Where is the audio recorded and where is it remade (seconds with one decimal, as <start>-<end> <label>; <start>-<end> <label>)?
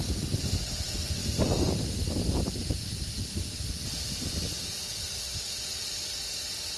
0.0-6.8 recorded